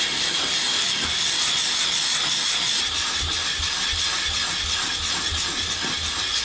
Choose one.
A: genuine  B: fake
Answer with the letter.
A